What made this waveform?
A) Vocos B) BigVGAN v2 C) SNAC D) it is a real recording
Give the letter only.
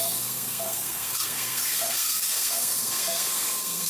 C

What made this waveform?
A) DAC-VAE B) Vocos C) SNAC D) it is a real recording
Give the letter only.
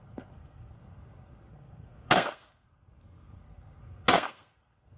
C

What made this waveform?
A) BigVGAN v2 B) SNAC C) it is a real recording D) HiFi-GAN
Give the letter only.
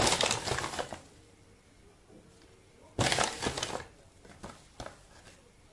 C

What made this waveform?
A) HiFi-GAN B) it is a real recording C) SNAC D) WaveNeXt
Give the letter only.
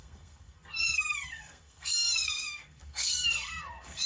C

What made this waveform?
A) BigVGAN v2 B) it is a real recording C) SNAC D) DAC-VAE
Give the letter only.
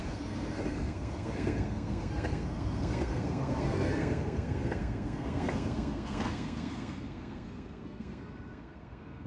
C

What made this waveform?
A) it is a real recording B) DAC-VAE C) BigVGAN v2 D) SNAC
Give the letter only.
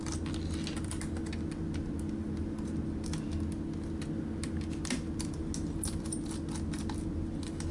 A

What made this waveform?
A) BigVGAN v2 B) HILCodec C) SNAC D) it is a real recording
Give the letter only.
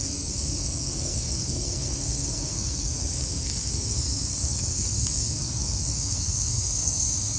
C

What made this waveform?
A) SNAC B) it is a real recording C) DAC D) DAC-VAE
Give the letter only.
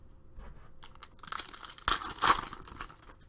B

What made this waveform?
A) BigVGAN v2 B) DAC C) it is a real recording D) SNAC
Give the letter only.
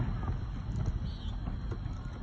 C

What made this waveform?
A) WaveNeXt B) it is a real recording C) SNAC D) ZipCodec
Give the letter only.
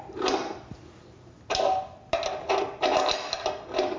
B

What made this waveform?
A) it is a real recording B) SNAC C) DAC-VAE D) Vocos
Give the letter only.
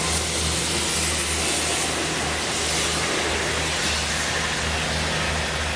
A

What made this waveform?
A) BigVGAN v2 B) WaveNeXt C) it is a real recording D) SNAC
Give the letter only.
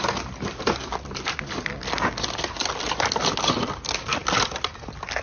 C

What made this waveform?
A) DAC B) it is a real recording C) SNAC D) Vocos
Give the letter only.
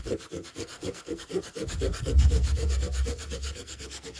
C